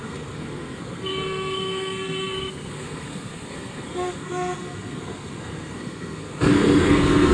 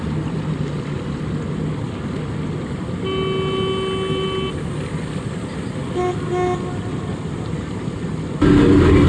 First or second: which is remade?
first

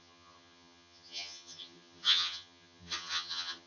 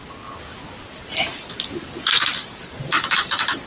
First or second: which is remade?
first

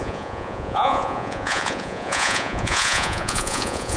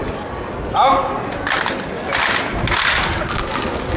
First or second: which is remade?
first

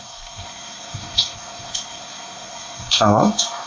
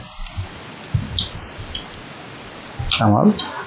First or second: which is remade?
first